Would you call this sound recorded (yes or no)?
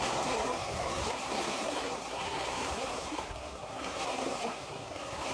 no